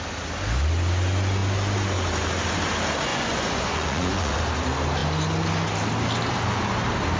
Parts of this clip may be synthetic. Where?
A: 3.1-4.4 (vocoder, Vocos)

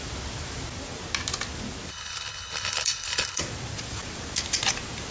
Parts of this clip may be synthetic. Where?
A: 1.9-3.4 (codec, HILCodec)

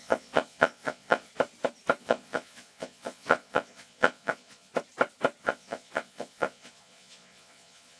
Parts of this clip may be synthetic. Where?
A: 0.0-1.3 (vocoder, Vocos); 2.0-4.7; 5.4-8.0